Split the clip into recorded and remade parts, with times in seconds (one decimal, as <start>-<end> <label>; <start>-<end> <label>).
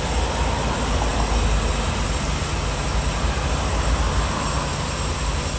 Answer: 0.0-5.6 recorded